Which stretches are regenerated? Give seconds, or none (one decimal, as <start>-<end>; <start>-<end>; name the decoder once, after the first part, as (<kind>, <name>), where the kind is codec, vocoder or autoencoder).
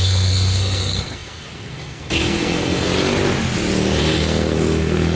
0.0-2.9 (codec, SNAC); 4.0-5.2